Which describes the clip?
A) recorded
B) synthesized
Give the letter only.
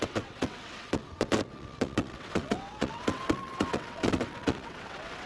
B